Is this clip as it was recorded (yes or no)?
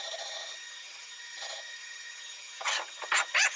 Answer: no